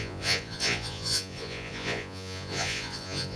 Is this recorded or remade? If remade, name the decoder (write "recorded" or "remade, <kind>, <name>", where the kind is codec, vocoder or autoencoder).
remade, vocoder, Vocos